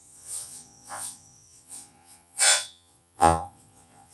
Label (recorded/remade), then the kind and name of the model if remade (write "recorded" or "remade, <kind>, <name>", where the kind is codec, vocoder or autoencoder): remade, vocoder, Vocos